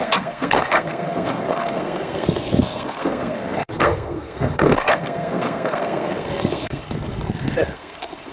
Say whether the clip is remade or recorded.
remade